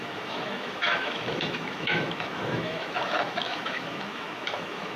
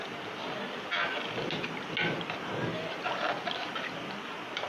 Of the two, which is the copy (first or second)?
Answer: first